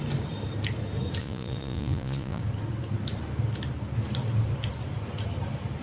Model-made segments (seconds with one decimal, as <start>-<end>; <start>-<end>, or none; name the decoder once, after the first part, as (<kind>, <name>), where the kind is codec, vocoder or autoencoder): 1.2-2.4 (vocoder, Vocos)